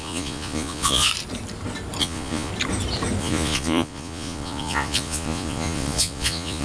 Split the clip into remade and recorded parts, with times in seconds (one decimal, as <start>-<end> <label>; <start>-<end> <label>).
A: 0.0-1.1 remade; 1.1-2.0 recorded; 2.0-2.5 remade; 2.5-3.2 recorded; 3.2-6.6 remade